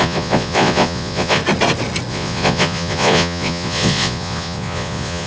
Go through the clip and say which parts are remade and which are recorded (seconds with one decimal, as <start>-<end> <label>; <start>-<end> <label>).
0.0-1.4 remade; 1.4-2.1 recorded; 2.1-5.3 remade